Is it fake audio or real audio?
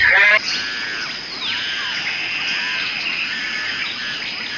real